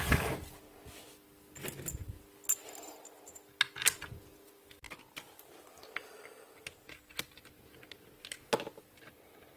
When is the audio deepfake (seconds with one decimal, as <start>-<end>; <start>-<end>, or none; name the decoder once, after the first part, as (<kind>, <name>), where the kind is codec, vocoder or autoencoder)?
none